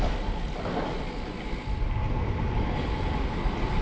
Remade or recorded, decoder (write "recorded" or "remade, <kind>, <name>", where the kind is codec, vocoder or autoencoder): recorded